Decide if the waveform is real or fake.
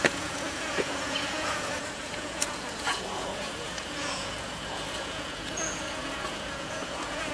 fake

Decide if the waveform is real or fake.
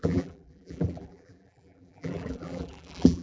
fake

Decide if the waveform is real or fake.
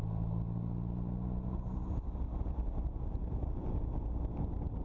real